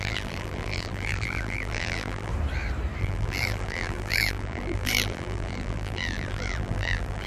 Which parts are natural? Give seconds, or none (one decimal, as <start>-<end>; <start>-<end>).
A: 2.3-3.0